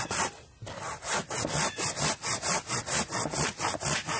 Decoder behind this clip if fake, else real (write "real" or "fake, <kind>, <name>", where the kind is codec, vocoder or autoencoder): real